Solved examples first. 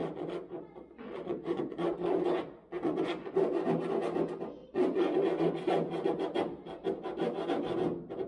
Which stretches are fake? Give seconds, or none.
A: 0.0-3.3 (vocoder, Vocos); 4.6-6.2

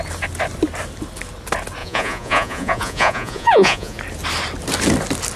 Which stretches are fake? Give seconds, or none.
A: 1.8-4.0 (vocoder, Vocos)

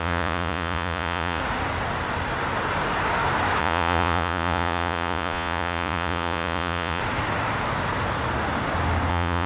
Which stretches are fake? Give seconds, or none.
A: 0.0-1.4 (vocoder, Vocos); 3.6-7.0; 9.1-9.5